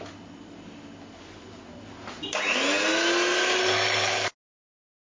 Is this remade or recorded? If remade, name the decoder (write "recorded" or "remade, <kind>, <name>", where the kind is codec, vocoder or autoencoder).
recorded